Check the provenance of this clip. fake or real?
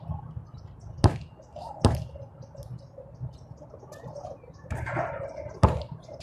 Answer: real